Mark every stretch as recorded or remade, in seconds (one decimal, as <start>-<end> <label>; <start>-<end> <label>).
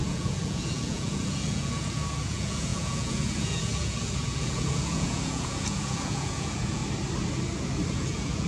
0.0-6.8 remade; 6.8-7.9 recorded; 7.9-8.5 remade